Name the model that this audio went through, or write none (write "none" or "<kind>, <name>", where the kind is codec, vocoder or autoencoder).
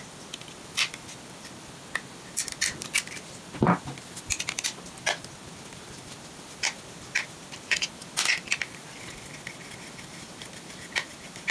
none